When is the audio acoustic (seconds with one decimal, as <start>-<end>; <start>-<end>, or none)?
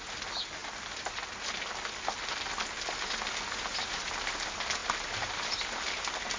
0.0-6.4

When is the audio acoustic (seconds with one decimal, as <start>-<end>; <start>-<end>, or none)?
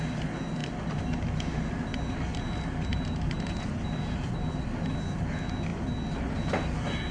0.0-2.9; 4.6-7.1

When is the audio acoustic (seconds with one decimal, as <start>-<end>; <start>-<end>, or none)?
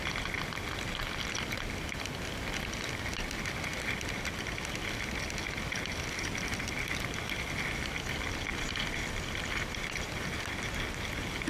0.0-11.5